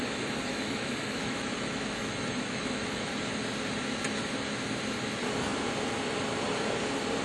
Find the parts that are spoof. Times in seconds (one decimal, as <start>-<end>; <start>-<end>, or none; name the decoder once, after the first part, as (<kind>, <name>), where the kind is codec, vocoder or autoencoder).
0.5-3.1 (autoencoder, DAC-VAE)